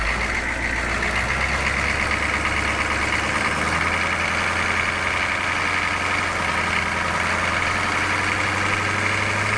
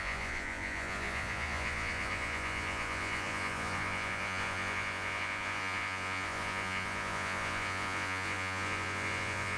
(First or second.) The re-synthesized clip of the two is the second